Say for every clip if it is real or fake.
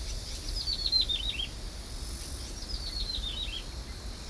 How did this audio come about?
real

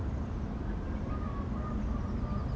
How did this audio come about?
real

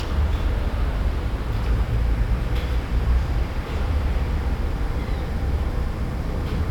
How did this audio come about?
fake